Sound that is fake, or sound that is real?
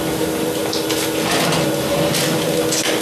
real